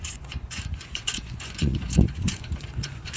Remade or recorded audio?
remade